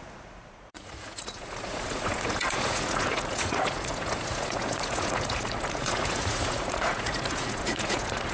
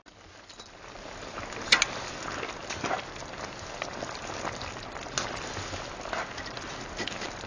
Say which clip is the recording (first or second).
second